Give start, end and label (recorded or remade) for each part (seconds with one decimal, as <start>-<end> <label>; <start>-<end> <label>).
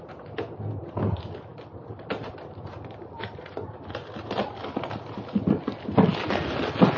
0.0-1.5 recorded; 1.5-2.7 remade; 2.7-7.0 recorded